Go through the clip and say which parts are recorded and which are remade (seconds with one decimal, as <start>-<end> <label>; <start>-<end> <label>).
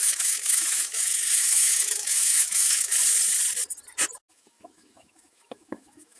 0.0-2.9 remade; 2.9-4.3 recorded; 4.3-6.2 remade